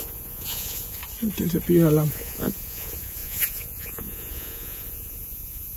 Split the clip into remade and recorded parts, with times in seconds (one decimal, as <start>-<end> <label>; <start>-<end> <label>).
0.0-1.0 remade; 1.0-2.1 recorded; 2.1-5.8 remade